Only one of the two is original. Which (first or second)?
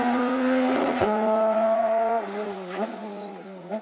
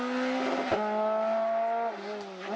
second